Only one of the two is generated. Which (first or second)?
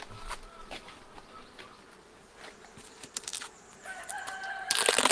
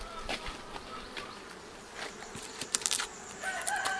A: second